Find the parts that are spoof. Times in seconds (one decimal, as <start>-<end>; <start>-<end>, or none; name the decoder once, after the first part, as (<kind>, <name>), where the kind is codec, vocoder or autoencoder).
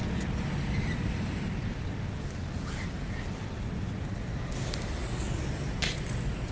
none